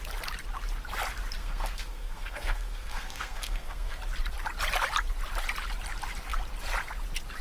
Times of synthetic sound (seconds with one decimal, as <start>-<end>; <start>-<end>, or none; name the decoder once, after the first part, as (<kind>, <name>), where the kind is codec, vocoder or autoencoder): 1.4-4.0 (codec, SNAC)

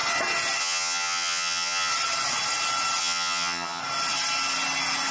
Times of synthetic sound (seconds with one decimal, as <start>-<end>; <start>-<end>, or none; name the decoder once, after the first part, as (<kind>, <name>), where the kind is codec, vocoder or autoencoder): 0.6-1.9 (vocoder, HiFi-GAN); 3.0-3.8

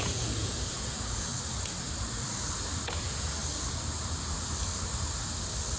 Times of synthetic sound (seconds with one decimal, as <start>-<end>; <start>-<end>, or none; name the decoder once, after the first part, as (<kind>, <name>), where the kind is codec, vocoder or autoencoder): 0.0-1.3 (vocoder, Vocos); 3.0-3.4

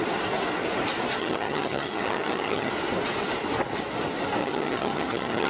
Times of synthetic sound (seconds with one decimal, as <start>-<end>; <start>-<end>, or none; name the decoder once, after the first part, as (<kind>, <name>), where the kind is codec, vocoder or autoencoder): 1.2-2.7 (vocoder, HiFi-GAN); 4.4-5.5

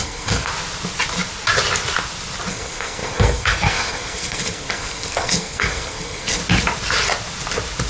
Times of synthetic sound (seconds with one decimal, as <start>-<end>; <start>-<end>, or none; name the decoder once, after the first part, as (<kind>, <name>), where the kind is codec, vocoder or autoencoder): 0.0-0.5 (codec, SNAC); 2.5-6.4